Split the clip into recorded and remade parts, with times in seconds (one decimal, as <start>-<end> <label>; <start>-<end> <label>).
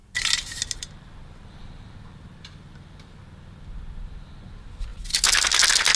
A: 0.0-3.2 remade; 3.2-6.0 recorded